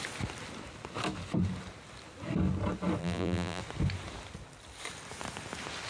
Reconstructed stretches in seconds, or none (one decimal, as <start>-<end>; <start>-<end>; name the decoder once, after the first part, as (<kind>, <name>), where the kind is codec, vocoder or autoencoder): 3.0-3.6 (vocoder, BigVGAN v2)